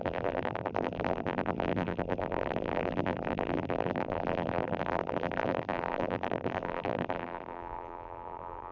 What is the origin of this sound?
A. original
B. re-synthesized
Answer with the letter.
B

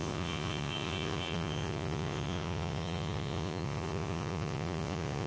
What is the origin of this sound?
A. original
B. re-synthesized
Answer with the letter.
B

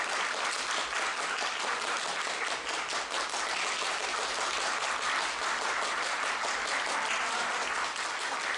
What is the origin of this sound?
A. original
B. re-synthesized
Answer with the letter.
A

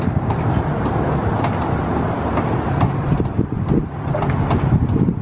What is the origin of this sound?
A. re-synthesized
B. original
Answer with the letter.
B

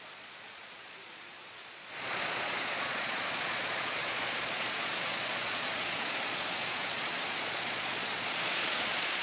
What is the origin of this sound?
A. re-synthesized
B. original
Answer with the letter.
A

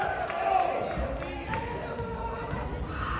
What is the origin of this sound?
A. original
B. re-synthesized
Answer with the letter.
A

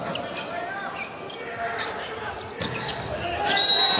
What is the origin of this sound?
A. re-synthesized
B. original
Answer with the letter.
B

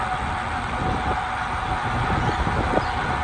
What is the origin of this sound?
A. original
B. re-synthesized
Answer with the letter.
A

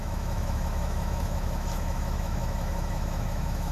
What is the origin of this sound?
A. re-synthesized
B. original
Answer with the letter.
A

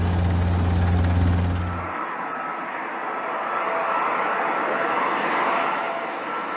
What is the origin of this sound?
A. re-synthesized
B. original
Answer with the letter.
B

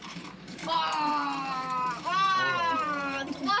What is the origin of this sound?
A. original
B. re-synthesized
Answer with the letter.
B